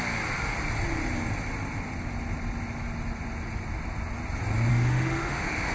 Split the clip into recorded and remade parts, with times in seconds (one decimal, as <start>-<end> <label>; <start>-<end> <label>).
0.0-4.7 recorded; 4.7-5.7 remade